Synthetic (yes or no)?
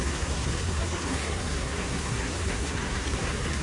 yes